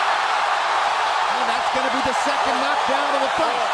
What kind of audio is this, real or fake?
real